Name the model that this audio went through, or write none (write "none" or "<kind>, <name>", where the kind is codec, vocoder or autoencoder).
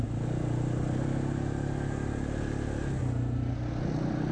none